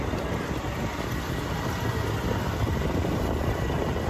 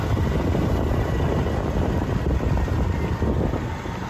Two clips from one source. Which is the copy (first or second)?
first